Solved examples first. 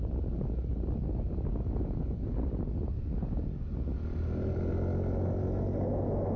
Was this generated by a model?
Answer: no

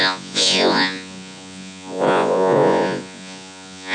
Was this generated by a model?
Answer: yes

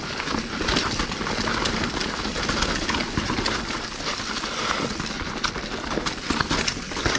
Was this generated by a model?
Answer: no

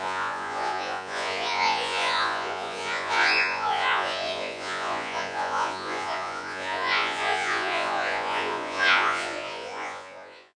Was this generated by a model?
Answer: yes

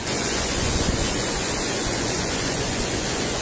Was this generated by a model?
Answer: yes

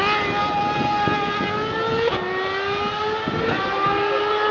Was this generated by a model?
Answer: no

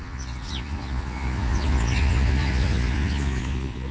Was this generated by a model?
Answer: yes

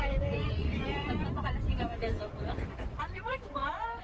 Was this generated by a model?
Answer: yes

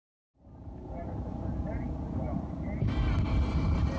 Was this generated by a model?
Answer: no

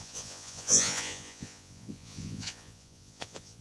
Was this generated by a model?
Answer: yes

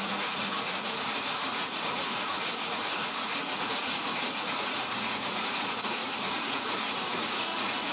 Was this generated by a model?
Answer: yes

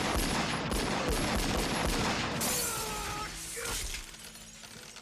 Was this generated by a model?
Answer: no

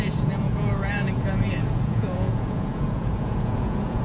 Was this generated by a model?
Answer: yes